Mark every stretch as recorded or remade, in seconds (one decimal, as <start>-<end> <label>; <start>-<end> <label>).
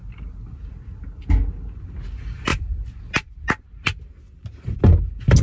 0.0-5.4 recorded